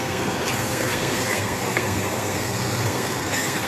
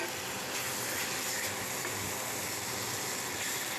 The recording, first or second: second